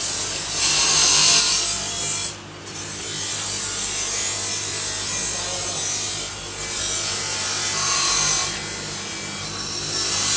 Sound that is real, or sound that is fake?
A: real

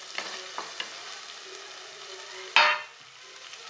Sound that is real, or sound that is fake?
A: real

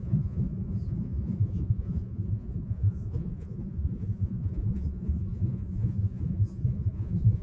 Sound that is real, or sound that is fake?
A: fake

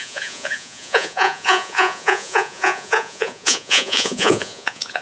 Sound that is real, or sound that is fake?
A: fake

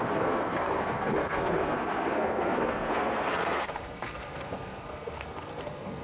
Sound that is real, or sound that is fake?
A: fake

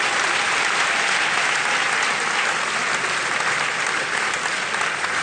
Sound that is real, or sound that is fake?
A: real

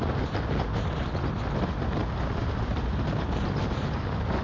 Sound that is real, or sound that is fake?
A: real